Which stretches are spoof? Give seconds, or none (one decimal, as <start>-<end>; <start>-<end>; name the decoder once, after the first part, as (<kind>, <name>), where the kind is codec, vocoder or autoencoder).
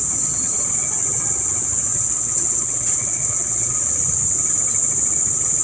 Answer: 1.9-3.8 (vocoder, WaveNeXt)